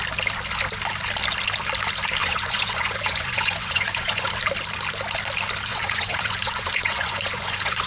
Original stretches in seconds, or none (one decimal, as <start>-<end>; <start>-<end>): 0.0-2.2; 4.3-5.7